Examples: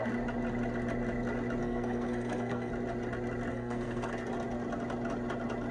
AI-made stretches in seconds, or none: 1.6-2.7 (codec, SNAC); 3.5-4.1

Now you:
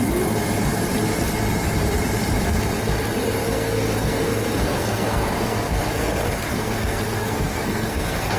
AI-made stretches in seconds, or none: 3.4-8.4 (codec, SNAC)

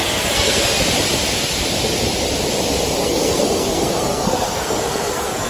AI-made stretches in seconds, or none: 0.0-0.8 (codec, SNAC); 3.0-5.5